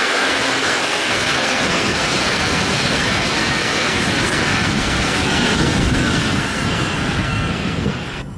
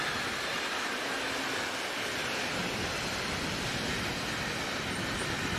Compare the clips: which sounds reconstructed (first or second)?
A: first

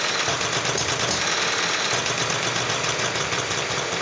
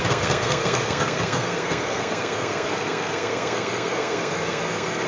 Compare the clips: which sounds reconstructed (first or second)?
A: second